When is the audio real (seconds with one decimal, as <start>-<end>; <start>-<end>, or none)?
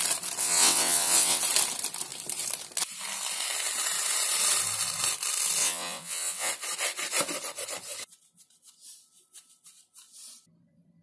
0.0-0.4; 1.4-5.6; 6.5-11.0